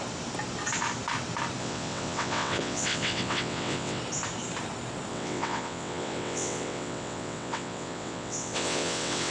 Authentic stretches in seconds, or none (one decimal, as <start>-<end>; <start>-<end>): 0.0-1.6; 4.0-5.1